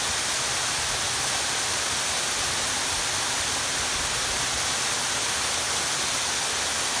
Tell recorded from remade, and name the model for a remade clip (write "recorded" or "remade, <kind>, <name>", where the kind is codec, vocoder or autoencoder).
recorded